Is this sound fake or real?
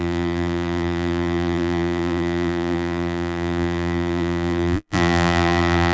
fake